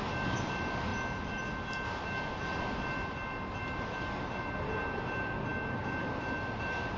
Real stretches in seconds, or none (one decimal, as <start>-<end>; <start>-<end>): 0.0-7.0